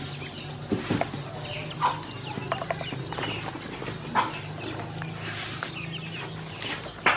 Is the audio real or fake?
real